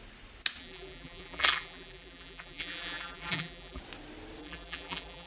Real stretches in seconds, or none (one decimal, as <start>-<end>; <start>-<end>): 0.0-0.6; 3.8-4.4